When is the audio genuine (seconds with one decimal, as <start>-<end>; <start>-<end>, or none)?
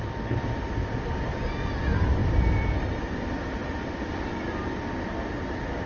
0.0-3.6; 4.4-5.9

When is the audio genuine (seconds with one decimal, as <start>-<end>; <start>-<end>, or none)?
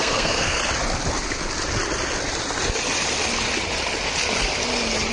0.6-5.1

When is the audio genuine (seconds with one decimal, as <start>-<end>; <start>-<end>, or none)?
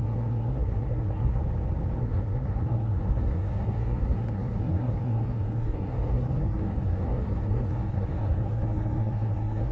1.4-2.0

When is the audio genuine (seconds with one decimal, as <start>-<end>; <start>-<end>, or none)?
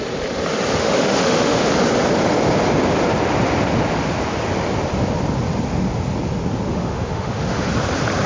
0.0-0.8; 1.7-6.7; 7.7-8.3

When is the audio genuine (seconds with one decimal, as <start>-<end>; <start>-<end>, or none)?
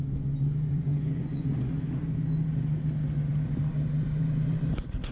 0.0-0.7; 1.7-5.1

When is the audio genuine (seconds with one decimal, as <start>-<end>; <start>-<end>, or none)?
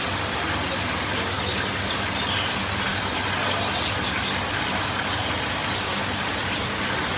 0.0-7.2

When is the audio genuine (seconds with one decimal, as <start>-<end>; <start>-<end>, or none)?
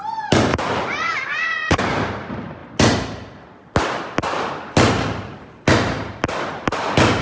0.0-0.5; 1.8-7.2